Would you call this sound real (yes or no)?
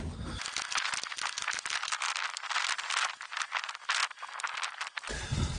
yes